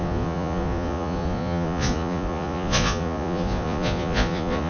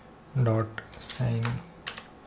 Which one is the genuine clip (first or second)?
second